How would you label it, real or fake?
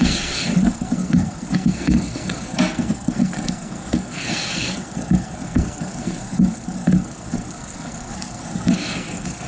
fake